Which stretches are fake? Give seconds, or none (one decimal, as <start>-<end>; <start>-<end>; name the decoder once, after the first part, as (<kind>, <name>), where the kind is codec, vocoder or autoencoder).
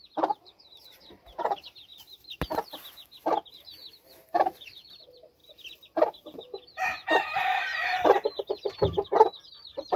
0.0-1.9 (vocoder, BigVGAN v2); 3.5-5.4; 6.7-10.0